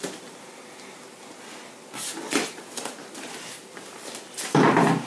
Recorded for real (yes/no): yes